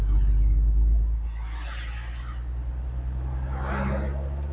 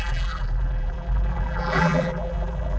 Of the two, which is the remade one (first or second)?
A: second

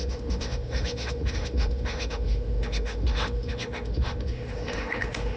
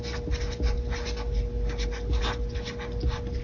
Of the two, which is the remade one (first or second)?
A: first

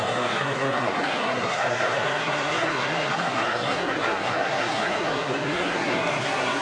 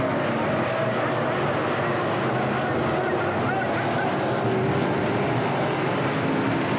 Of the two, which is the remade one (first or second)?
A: first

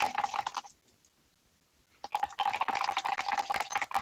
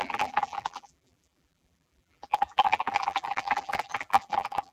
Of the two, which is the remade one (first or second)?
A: second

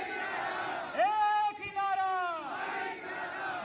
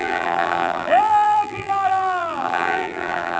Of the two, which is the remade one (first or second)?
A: second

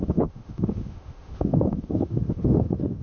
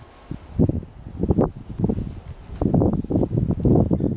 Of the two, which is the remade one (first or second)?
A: first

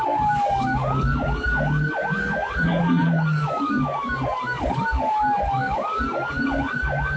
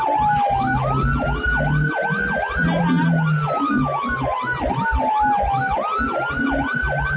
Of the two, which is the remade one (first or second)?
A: first